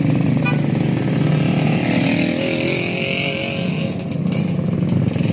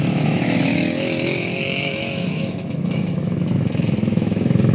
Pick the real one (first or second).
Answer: first